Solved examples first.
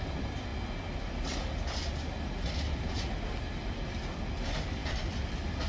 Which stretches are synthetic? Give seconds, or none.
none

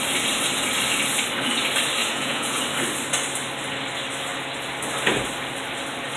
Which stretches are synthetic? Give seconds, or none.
2.0-2.6 (vocoder, Vocos)